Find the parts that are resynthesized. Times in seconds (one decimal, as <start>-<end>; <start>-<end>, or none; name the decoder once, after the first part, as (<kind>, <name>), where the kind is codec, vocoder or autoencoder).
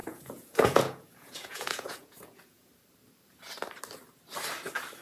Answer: 0.0-2.7 (vocoder, Vocos)